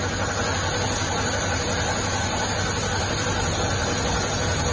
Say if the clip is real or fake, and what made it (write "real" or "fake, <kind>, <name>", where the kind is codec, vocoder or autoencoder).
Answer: real